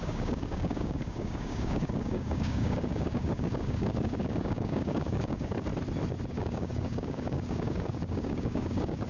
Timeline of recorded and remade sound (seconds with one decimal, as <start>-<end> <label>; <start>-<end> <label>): 0.0-5.7 remade; 5.7-6.3 recorded; 6.3-9.1 remade